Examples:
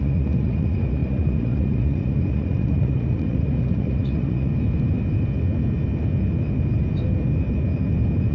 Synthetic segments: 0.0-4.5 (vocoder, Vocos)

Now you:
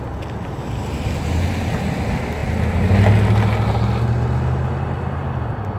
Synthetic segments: none

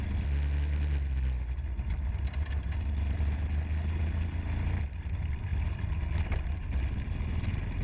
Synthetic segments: none

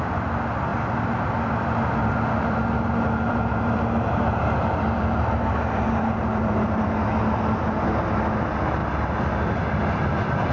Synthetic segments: 2.0-6.9 (vocoder, BigVGAN v2)

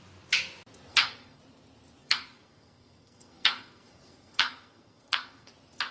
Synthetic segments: 0.9-1.4 (codec, SNAC); 2.0-5.5

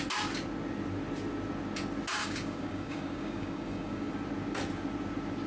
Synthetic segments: 2.2-4.1 (codec, DAC)